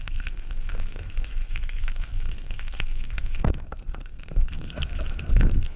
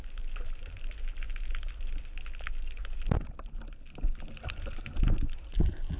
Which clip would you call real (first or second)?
second